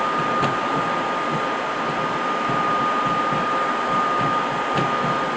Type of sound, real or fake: real